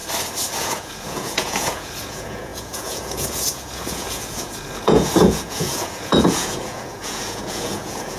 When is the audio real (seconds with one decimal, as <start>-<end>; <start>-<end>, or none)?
0.0-0.6